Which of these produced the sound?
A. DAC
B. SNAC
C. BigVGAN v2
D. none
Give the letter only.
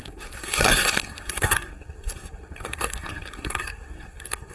B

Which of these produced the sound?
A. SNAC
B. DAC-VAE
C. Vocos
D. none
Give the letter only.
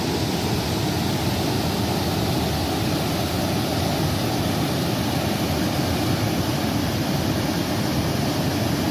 D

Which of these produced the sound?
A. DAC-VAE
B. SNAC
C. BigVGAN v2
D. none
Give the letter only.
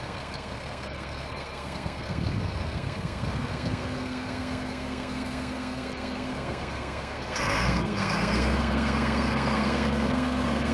B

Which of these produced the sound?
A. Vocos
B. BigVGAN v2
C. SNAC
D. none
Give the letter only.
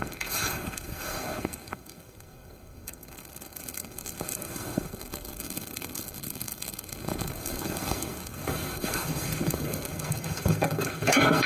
C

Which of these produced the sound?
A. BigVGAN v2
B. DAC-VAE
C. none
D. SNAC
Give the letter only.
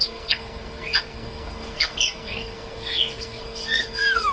D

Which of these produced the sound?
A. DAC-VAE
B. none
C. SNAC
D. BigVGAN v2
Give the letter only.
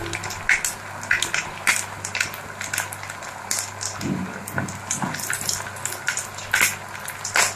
B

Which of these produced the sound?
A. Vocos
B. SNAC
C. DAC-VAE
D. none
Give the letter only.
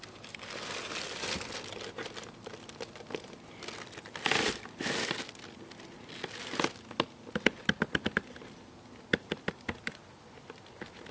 D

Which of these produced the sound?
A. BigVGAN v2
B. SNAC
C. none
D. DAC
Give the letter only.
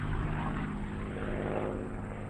C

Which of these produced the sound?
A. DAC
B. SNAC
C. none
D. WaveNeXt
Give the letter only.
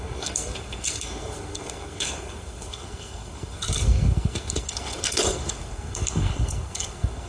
B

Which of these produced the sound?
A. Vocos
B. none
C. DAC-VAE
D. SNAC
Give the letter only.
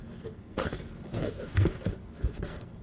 D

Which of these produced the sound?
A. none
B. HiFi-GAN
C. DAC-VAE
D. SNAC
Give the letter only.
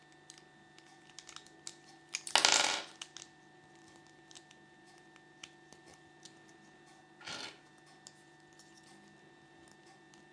A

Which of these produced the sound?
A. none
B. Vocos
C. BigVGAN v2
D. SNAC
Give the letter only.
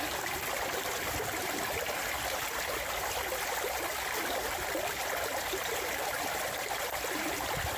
A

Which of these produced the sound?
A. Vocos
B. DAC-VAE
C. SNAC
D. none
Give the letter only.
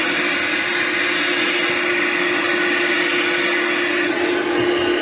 D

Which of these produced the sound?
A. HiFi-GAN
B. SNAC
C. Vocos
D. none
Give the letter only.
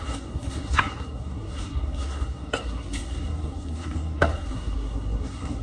B